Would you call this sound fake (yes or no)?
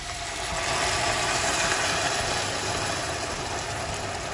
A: no